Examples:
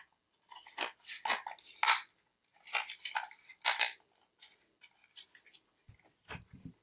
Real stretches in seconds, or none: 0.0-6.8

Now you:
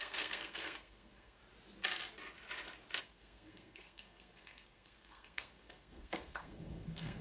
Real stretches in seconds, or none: 1.4-3.0

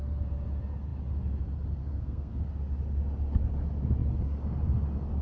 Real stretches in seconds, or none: 0.0-1.8; 2.5-5.2

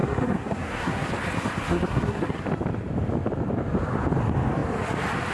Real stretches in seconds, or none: 1.1-1.7; 2.4-5.3

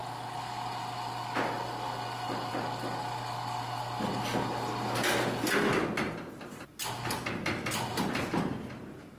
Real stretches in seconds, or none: 0.0-9.2

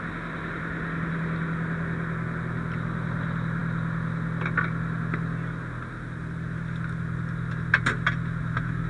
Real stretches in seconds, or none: 0.0-8.9

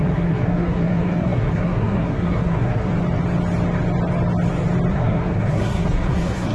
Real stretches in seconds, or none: 2.9-4.9

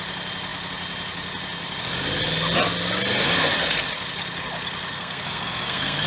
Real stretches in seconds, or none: 0.0-4.9